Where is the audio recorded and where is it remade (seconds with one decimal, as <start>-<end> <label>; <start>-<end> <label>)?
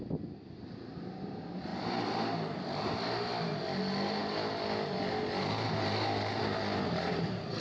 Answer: 0.0-7.6 recorded